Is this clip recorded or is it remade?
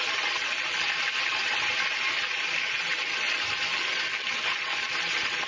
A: recorded